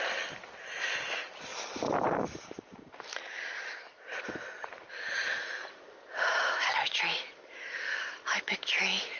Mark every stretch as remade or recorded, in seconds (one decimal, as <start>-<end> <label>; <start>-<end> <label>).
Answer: 0.0-1.5 recorded; 1.5-2.9 remade; 2.9-5.3 recorded; 5.3-6.7 remade; 6.7-9.2 recorded